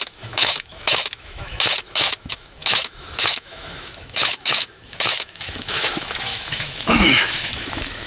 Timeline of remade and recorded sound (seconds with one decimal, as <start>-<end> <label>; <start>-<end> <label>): 0.0-8.1 remade